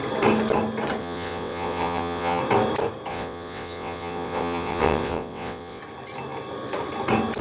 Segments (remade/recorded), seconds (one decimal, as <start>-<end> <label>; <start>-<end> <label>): 0.0-1.0 recorded; 1.0-2.4 remade; 2.4-3.1 recorded; 3.1-5.8 remade; 5.8-7.4 recorded